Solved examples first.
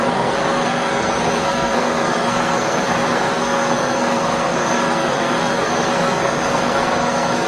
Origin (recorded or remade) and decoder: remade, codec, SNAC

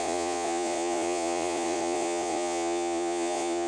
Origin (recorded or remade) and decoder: remade, vocoder, Vocos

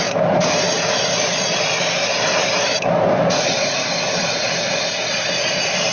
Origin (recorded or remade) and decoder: recorded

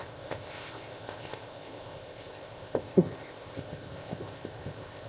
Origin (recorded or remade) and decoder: remade, codec, ZipCodec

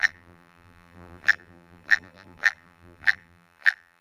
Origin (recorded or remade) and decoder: remade, vocoder, BigVGAN v2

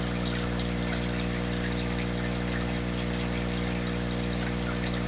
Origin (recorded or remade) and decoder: recorded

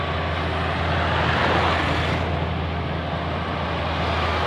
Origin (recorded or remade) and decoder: recorded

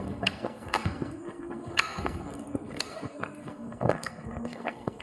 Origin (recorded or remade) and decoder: remade, codec, SNAC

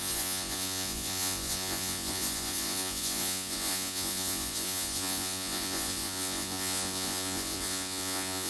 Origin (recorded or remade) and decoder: remade, vocoder, Vocos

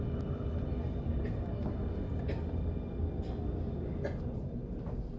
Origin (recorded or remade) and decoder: recorded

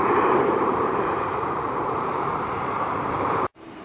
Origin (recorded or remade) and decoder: remade, vocoder, BigVGAN v2